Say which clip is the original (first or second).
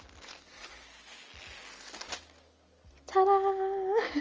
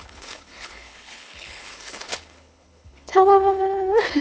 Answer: first